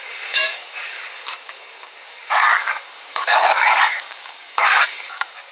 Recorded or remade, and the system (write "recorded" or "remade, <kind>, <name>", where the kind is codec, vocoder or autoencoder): remade, codec, DAC